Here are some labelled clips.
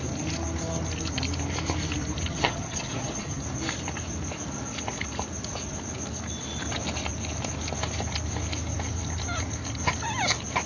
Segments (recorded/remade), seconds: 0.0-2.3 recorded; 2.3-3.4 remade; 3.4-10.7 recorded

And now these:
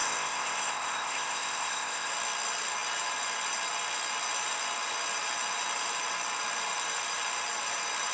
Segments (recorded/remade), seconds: 0.0-2.1 remade; 2.1-8.1 recorded

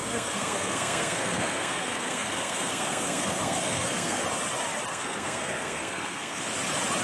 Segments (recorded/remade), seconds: 0.0-4.2 remade; 4.2-4.9 recorded; 4.9-6.4 remade; 6.4-7.0 recorded

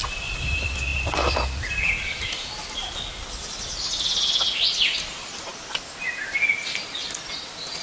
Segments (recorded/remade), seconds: 0.0-7.8 recorded

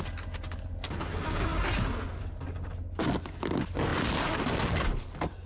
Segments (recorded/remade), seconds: 0.0-5.5 recorded